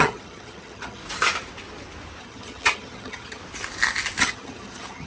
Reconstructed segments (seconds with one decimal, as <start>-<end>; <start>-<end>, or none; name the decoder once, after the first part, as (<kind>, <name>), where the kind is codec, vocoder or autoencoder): 0.0-1.0 (vocoder, HiFi-GAN); 2.2-3.4; 4.2-5.1